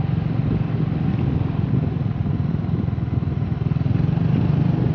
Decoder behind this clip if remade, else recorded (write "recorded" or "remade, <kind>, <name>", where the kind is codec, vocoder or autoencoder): recorded